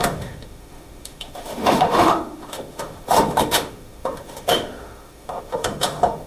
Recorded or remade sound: remade